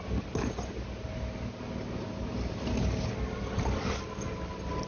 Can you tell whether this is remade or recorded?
recorded